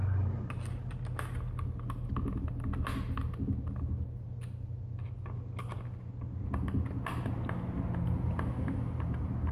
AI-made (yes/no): no